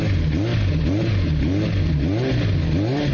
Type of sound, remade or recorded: recorded